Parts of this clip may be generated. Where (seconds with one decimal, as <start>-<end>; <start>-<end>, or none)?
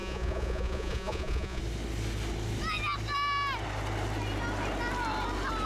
0.0-1.6